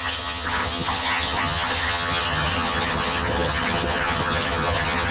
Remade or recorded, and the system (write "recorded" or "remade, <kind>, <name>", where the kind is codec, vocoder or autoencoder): remade, vocoder, HiFi-GAN